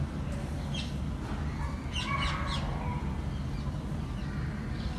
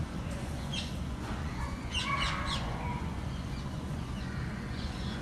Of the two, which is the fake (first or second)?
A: second